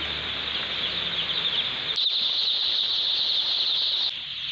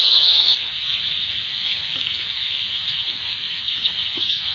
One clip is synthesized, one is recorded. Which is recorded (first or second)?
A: first